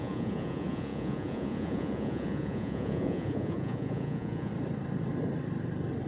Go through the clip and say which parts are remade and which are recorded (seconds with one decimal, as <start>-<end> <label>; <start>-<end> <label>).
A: 0.0-4.5 remade; 4.5-6.1 recorded